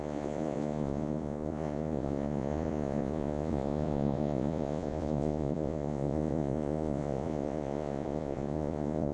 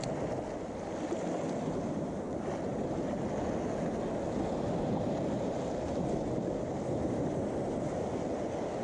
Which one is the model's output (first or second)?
first